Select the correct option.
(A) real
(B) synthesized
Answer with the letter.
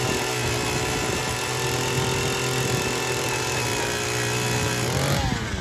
A